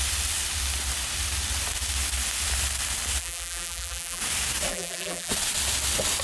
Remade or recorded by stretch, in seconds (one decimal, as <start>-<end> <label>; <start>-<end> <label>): 0.0-3.2 recorded; 3.2-4.2 remade; 4.2-4.7 recorded; 4.7-5.3 remade; 5.3-6.2 recorded